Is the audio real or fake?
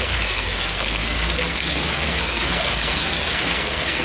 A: fake